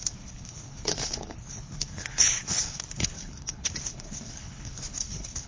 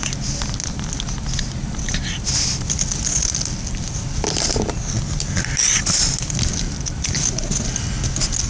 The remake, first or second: first